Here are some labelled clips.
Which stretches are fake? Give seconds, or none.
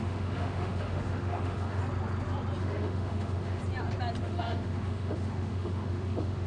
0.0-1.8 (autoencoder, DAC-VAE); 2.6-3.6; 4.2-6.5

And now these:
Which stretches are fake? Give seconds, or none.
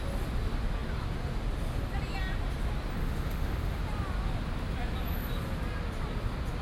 3.0-3.8 (autoencoder, DAC-VAE)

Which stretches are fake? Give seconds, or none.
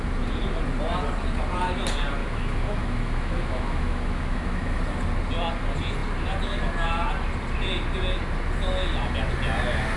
2.2-4.8 (autoencoder, DAC-VAE)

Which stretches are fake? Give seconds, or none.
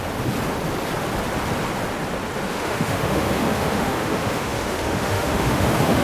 2.5-6.0 (autoencoder, DAC-VAE)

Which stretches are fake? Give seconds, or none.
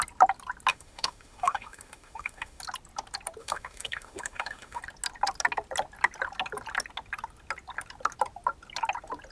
0.7-2.6 (autoencoder, DAC-VAE); 3.4-4.8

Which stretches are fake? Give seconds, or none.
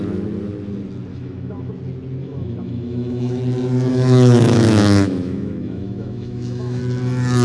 1.1-1.7 (autoencoder, DAC-VAE); 2.2-3.4; 3.9-6.8